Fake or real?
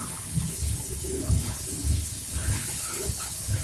fake